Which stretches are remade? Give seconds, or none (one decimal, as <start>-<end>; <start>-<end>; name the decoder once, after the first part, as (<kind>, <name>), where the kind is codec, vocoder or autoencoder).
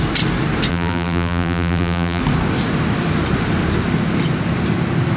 0.7-2.2 (vocoder, BigVGAN v2)